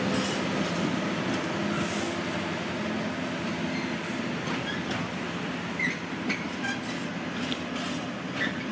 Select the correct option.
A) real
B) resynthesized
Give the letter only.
A